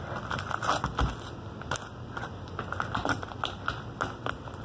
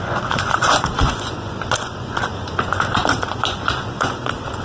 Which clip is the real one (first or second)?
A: first